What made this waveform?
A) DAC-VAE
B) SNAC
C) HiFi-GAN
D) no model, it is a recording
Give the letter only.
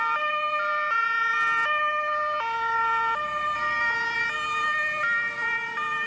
D